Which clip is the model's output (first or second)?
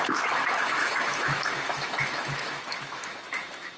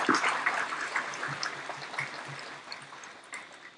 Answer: first